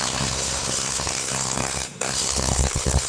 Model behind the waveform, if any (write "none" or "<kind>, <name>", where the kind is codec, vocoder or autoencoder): codec, SNAC